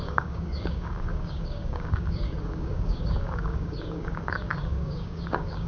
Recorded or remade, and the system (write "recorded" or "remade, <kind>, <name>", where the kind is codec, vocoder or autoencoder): remade, codec, DAC